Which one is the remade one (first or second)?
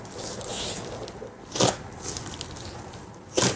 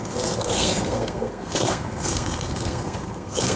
second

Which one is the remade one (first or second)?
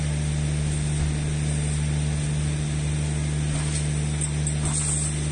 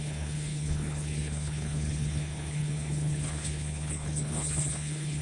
second